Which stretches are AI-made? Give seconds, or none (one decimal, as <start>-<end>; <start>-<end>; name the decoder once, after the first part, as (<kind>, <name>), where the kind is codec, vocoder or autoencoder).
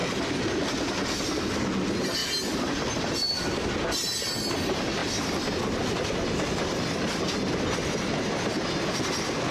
none